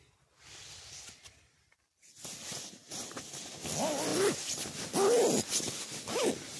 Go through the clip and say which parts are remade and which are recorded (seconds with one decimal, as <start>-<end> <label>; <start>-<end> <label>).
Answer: 0.0-6.6 recorded